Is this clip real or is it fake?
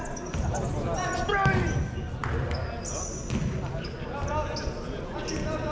real